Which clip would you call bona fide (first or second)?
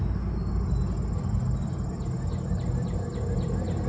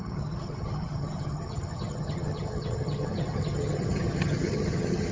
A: first